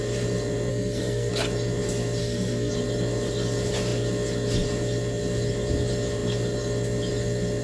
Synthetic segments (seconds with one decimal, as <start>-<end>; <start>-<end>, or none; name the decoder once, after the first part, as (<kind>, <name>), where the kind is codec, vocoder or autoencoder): 0.7-1.3 (codec, SNAC); 2.2-2.7